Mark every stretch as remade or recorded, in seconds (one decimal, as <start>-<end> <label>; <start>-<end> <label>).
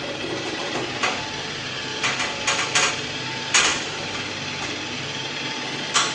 0.0-0.6 recorded; 0.6-1.2 remade; 1.2-1.9 recorded; 1.9-2.9 remade; 2.9-3.7 recorded; 3.7-5.4 remade; 5.4-6.1 recorded